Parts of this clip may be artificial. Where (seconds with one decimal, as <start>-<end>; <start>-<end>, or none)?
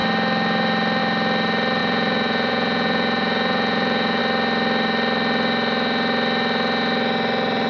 1.8-4.2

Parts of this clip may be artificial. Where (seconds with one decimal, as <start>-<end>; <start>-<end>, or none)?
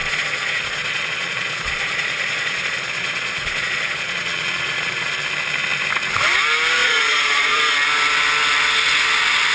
0.0-5.1; 6.8-7.6